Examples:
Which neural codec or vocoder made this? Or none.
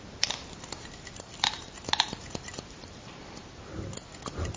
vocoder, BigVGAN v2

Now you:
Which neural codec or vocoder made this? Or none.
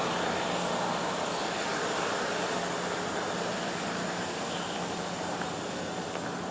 none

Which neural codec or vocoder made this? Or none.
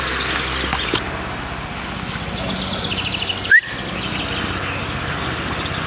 none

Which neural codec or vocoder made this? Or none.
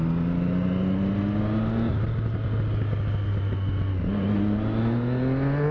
none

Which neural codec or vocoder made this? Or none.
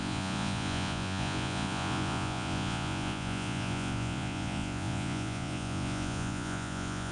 vocoder, Vocos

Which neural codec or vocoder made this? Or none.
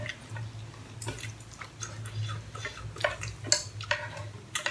none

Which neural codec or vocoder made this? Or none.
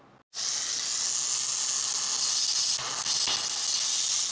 none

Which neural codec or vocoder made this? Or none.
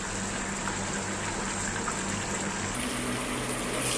none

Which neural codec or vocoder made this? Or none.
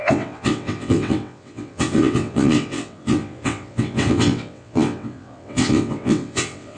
vocoder, WaveNeXt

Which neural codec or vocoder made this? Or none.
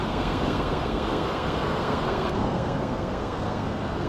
codec, SNAC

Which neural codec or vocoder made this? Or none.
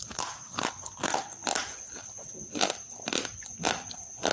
none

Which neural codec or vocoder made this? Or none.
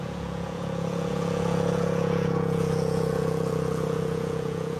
vocoder, Vocos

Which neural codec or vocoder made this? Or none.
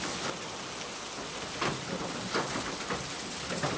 none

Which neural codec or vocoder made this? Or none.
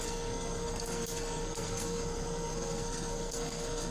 codec, SNAC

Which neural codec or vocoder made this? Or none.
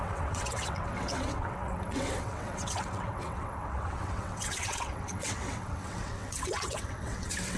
vocoder, WaveNeXt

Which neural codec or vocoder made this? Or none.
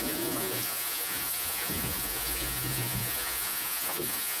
vocoder, Vocos